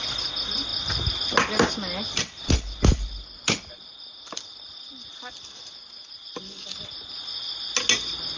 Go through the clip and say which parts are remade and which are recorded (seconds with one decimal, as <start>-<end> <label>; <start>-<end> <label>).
0.0-8.4 recorded